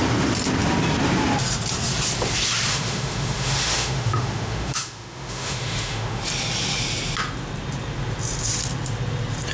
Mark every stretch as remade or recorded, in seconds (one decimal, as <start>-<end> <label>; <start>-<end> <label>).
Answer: 0.0-2.7 recorded; 2.7-6.2 remade; 6.2-9.5 recorded